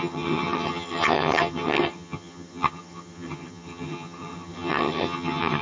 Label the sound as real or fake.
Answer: fake